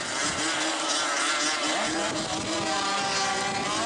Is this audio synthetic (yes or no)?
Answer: no